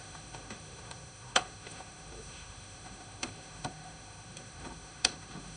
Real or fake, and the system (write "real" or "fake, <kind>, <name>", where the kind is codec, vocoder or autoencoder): fake, autoencoder, DAC-VAE